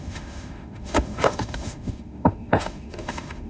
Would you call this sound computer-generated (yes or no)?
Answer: yes